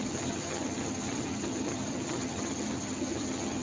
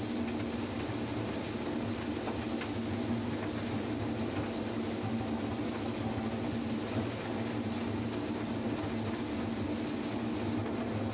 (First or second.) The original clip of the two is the second